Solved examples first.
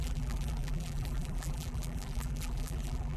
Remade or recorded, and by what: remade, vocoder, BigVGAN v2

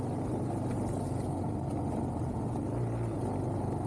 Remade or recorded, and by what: recorded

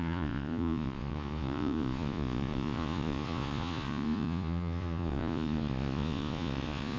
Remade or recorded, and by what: remade, vocoder, Vocos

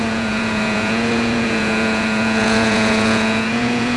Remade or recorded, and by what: remade, vocoder, Vocos